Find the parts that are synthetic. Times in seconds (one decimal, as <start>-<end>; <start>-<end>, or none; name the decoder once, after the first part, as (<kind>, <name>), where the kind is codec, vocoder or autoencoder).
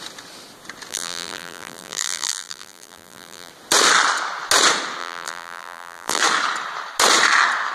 0.9-3.5 (vocoder, BigVGAN v2); 5.0-6.2